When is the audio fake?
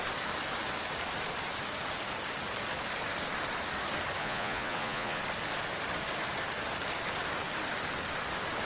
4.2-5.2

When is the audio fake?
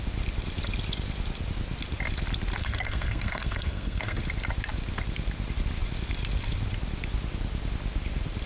2.6-4.2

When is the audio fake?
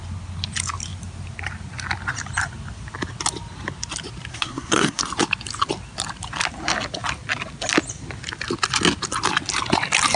4.3-5.0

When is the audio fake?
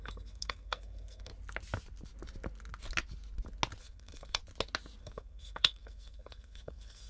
0.0-1.3; 3.8-4.4; 5.0-7.1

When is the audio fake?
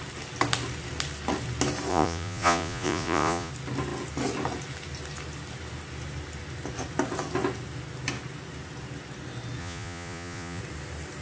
1.9-3.5; 9.6-10.6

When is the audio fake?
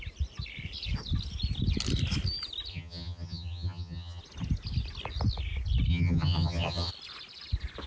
2.7-4.2; 5.9-6.9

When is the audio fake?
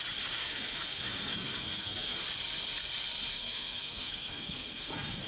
0.4-2.2; 3.3-5.3